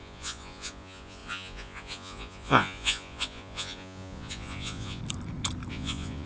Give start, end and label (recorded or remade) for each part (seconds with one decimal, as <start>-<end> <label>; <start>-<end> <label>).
0.0-5.0 remade; 5.0-5.7 recorded; 5.7-6.3 remade